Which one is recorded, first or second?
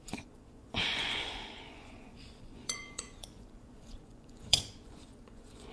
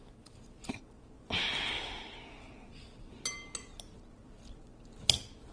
second